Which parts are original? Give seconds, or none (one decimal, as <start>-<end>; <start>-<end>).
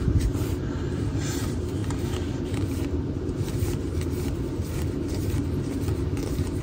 none